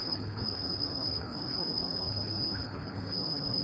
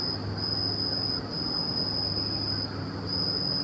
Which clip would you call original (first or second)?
second